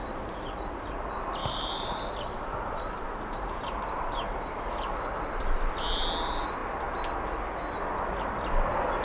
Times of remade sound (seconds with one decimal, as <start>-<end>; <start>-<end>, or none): 0.0-0.9; 1.4-5.8